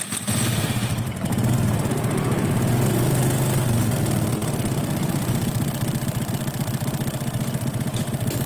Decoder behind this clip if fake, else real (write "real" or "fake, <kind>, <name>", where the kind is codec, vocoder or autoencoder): real